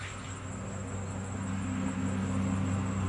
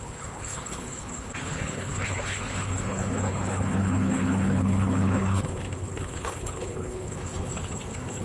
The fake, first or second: second